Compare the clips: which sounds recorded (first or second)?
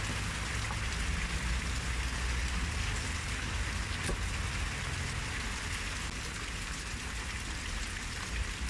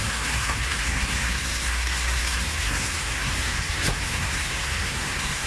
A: first